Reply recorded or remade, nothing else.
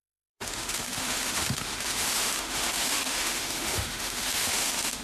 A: remade